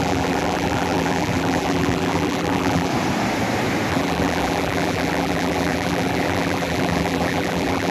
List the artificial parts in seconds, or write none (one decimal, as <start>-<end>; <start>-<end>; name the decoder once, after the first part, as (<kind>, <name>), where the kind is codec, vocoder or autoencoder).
0.0-2.9 (vocoder, BigVGAN v2); 3.9-7.9